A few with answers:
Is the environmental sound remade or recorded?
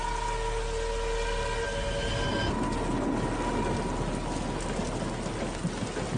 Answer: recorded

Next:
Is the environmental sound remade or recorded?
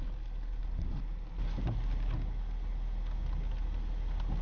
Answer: recorded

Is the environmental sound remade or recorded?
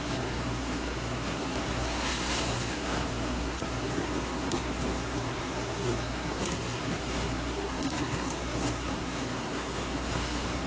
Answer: remade